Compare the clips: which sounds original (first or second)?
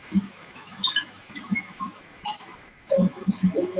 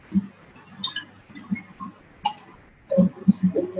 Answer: second